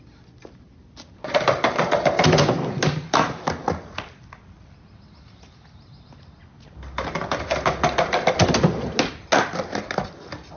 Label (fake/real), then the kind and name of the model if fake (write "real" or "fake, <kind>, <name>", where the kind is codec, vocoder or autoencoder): real